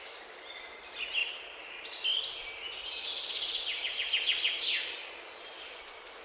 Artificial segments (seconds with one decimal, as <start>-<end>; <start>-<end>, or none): none